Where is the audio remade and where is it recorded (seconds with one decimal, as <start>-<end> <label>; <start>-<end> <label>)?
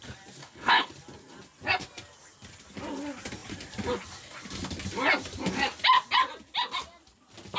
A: 0.0-0.4 recorded; 0.4-0.9 remade; 0.9-7.6 recorded